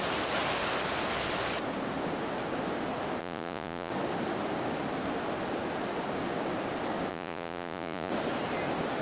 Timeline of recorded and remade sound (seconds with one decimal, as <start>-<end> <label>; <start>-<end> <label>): 0.0-3.2 recorded; 3.2-3.9 remade; 3.9-7.1 recorded; 7.1-8.1 remade; 8.1-9.0 recorded